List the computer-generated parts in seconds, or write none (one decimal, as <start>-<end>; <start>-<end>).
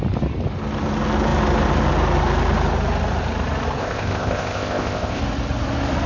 3.8-5.2